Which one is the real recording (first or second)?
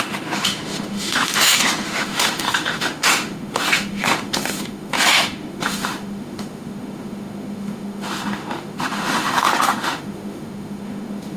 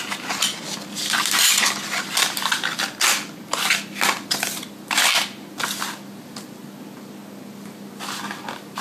second